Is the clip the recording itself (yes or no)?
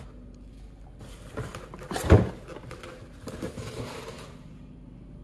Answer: yes